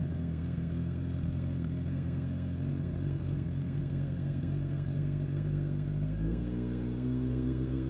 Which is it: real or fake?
fake